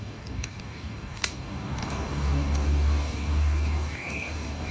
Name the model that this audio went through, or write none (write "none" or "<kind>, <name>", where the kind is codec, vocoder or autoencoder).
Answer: codec, DAC